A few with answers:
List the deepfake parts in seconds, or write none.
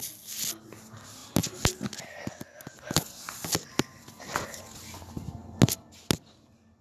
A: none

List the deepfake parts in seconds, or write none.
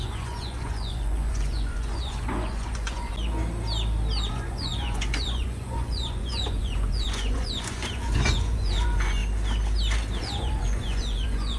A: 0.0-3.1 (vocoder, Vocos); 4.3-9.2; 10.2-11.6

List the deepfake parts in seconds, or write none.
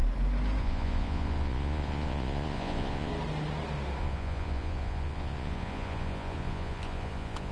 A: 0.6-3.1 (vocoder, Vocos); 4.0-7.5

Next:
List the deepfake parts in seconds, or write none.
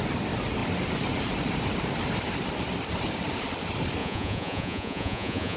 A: 4.0-5.6 (vocoder, Vocos)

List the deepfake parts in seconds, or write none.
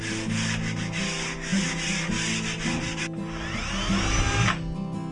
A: none